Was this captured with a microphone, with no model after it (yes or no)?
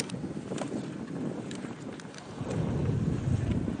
yes